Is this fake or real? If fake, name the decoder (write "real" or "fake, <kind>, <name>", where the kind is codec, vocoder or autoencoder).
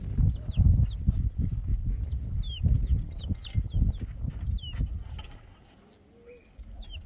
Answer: real